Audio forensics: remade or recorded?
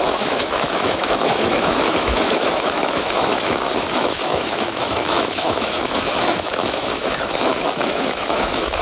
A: remade